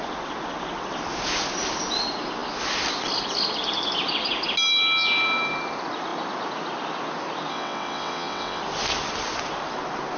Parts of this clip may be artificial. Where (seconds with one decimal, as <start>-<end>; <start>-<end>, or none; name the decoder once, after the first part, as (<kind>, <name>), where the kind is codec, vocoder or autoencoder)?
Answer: 7.5-8.6 (vocoder, WaveNeXt)